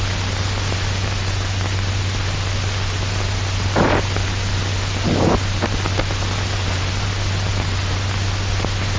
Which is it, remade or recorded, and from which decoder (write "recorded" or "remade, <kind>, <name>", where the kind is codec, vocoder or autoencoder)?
recorded